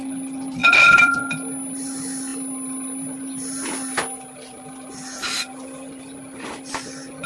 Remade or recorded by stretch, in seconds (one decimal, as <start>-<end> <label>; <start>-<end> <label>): 0.0-7.3 recorded